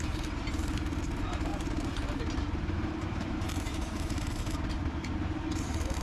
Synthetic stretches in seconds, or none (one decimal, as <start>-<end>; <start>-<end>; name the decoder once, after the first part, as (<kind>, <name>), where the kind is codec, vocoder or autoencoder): 1.5-4.4 (vocoder, BigVGAN v2)